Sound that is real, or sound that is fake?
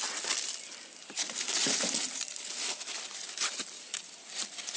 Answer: real